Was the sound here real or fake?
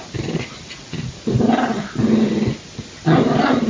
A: real